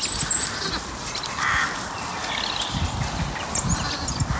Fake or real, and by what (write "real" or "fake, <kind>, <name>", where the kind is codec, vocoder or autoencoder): real